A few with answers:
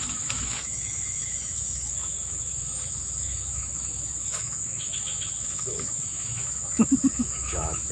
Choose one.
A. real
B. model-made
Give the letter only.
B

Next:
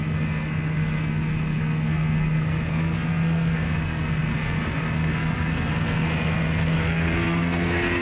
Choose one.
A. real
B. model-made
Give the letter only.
B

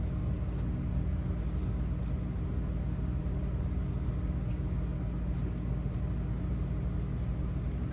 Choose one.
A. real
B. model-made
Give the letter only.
A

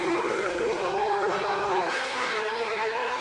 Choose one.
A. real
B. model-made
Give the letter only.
B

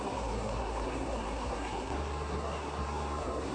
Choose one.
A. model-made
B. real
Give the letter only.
A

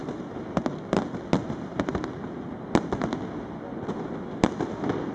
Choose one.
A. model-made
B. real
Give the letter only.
B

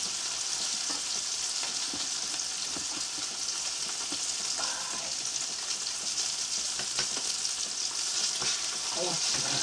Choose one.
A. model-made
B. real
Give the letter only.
B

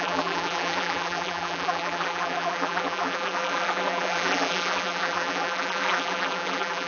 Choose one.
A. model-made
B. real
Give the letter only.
A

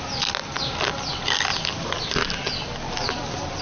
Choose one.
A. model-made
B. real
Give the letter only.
B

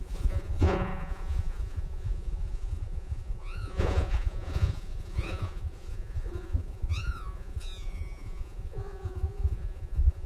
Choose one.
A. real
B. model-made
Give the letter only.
B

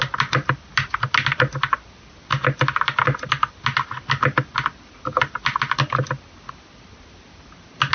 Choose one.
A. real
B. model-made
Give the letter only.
A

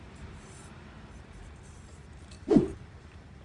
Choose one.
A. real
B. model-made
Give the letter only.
B